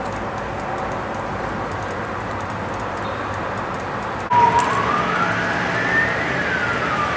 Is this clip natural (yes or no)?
yes